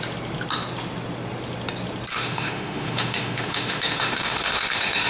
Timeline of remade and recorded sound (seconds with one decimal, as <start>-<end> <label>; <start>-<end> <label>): 0.0-2.1 recorded; 2.1-5.1 remade